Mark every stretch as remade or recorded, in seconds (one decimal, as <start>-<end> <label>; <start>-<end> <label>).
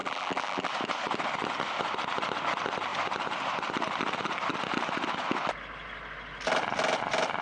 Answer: 0.0-0.7 remade; 0.7-7.4 recorded